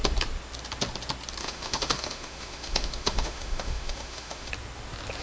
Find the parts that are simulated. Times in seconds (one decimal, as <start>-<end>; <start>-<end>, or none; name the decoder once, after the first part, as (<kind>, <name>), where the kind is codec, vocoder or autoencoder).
1.4-4.5 (autoencoder, DAC-VAE)